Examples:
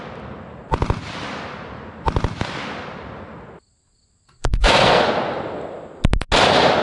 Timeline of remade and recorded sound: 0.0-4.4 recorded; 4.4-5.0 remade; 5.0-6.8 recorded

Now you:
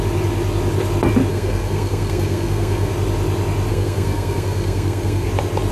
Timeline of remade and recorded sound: 0.0-1.3 recorded; 1.3-2.9 remade; 2.9-3.7 recorded; 3.7-5.3 remade; 5.3-5.7 recorded

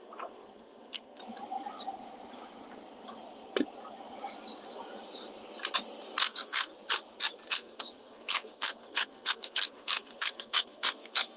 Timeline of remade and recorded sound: 0.0-1.2 remade; 1.2-6.2 recorded; 6.2-6.7 remade; 6.7-7.5 recorded; 7.5-11.4 remade